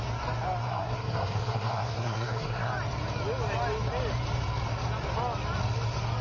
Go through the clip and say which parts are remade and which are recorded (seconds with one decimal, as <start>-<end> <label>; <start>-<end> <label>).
0.0-0.6 recorded; 0.6-2.7 remade; 2.7-6.2 recorded